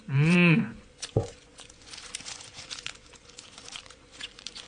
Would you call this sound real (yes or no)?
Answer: no